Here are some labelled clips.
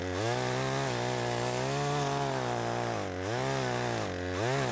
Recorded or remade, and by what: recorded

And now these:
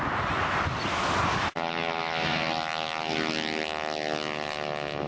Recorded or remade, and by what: recorded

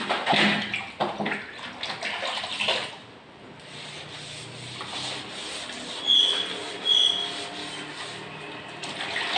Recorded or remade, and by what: recorded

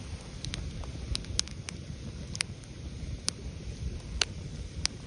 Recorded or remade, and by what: recorded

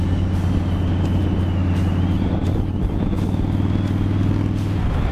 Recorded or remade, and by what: recorded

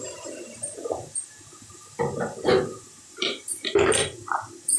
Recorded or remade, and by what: remade, vocoder, BigVGAN v2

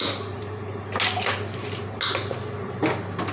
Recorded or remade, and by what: recorded